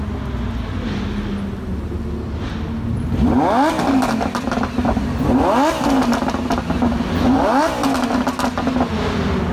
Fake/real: real